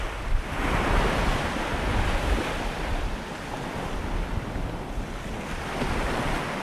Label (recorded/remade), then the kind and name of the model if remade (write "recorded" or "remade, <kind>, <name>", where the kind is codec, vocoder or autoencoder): recorded